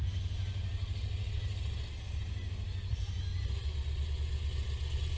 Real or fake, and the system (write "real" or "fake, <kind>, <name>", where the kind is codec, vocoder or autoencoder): real